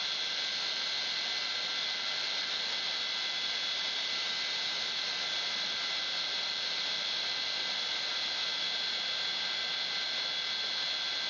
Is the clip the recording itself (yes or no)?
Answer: yes